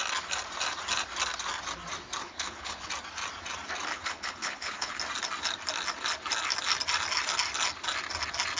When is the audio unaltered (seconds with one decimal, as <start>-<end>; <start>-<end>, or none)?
0.0-2.2; 2.9-3.9; 5.0-8.6